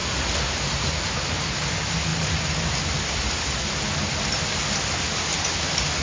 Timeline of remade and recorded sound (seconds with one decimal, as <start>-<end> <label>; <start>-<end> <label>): 0.0-6.0 recorded